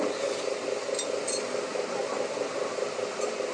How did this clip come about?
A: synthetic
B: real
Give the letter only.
B